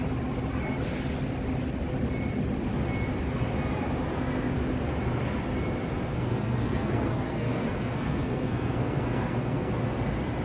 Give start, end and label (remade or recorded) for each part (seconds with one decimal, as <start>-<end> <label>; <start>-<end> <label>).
0.0-6.1 recorded; 6.1-9.7 remade; 9.7-10.4 recorded